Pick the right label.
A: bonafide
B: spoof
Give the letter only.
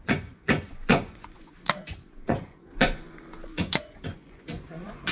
B